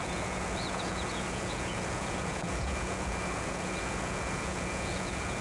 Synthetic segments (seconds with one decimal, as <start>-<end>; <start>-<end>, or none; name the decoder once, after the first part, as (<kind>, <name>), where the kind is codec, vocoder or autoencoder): 0.0-5.4 (vocoder, Vocos)